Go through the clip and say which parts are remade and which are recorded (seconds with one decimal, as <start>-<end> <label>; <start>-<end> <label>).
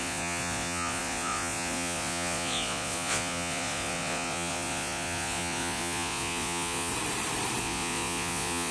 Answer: 0.0-6.9 remade; 6.9-7.6 recorded; 7.6-8.7 remade